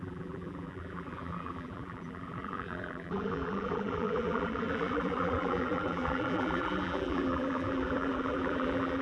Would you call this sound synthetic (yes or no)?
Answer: yes